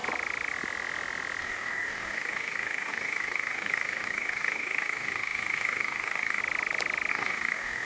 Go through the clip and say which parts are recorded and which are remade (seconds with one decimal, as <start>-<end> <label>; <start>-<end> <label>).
0.0-1.4 recorded; 1.4-6.4 remade; 6.4-7.1 recorded; 7.1-7.9 remade